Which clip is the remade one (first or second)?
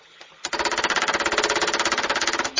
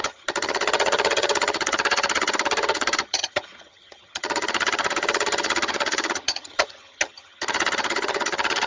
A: second